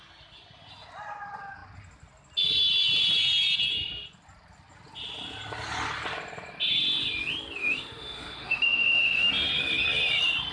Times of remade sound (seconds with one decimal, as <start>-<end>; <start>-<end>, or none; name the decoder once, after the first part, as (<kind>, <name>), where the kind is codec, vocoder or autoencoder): 7.6-9.3 (autoencoder, DAC-VAE)